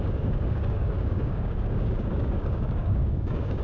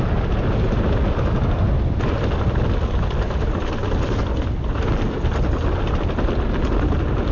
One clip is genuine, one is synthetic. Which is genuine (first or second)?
second